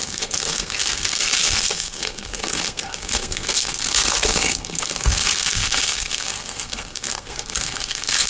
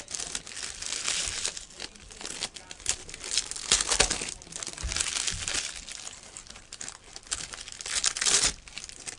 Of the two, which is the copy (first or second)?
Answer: first